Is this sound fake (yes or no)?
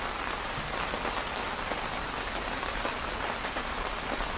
no